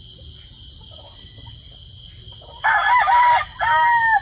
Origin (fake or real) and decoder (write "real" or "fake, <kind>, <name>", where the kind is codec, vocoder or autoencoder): real